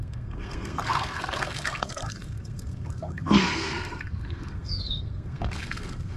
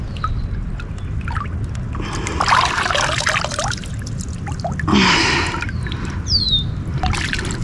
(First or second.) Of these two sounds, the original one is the second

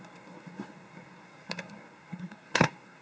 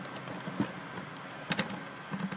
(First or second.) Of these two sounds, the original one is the second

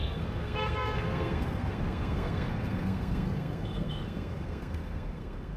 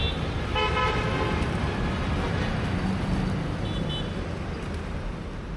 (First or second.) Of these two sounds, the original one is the second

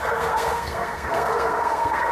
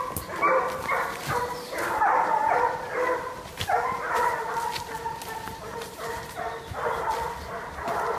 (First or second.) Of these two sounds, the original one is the second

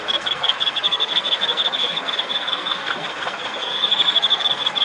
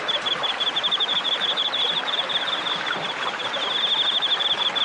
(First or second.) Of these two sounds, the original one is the second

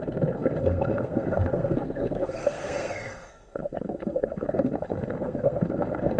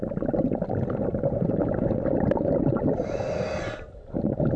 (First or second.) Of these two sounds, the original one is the second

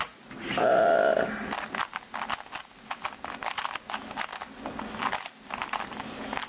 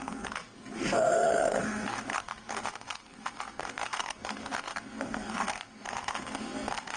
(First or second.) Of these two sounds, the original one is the first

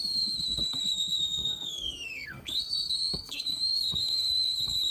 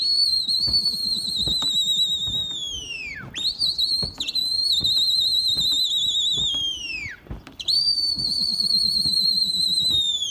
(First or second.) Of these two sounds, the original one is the second